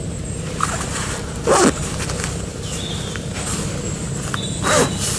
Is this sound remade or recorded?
recorded